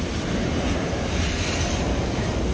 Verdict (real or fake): real